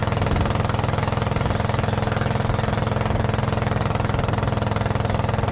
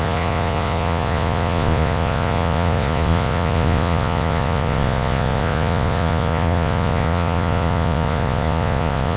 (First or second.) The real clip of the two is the first